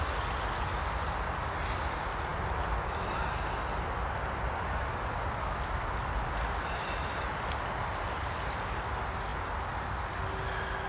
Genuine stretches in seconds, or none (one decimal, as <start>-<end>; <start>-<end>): 0.0-10.9